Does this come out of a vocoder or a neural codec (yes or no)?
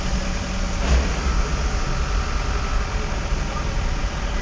no